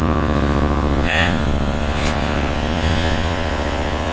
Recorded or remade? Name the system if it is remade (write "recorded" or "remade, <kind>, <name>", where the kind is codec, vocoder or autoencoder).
remade, vocoder, Vocos